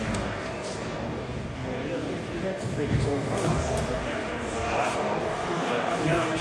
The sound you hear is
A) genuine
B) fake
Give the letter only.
B